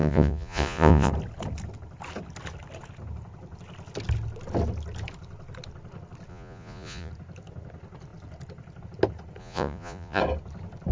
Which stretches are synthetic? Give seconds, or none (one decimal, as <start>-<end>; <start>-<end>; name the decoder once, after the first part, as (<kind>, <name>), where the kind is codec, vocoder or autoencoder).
0.0-1.1 (vocoder, Vocos); 6.3-7.1; 9.4-10.2